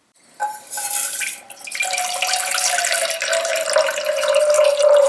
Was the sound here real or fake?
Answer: fake